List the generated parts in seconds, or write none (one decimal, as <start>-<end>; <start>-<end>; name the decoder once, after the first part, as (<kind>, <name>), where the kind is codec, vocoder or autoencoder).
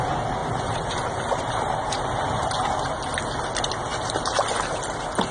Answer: 0.4-2.0 (vocoder, BigVGAN v2); 3.9-4.4